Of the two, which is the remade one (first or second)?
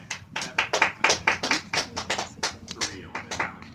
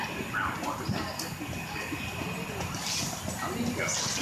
first